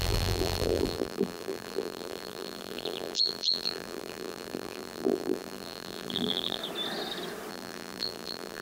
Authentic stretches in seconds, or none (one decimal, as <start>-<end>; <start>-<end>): 6.6-7.5